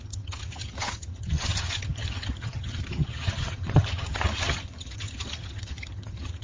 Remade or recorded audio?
remade